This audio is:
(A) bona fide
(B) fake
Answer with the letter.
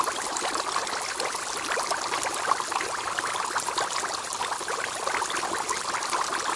A